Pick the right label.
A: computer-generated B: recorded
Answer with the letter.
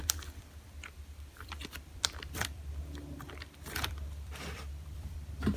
A